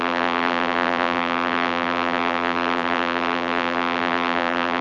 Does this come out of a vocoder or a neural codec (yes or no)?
yes